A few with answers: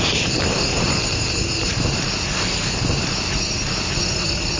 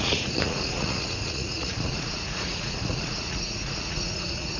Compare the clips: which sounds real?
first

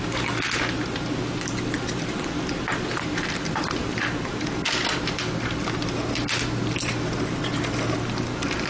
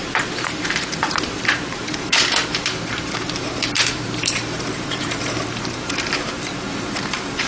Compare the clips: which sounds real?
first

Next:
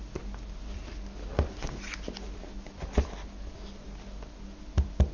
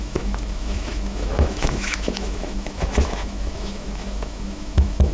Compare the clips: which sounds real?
first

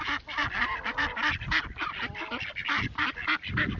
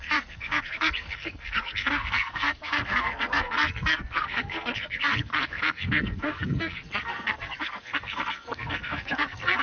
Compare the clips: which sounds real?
first